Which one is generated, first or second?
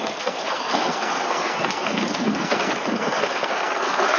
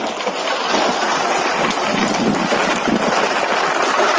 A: first